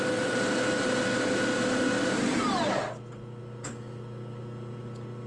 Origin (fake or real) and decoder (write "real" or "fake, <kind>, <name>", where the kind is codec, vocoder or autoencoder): real